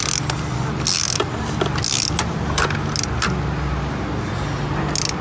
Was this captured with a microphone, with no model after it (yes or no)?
yes